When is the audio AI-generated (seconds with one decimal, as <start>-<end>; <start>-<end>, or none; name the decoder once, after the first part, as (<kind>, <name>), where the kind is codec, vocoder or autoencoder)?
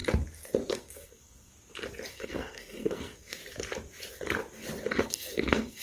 0.7-1.5 (codec, SNAC); 2.1-3.4; 5.0-5.8